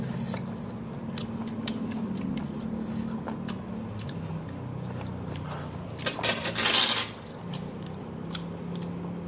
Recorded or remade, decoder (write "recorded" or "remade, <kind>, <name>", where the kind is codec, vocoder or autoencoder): recorded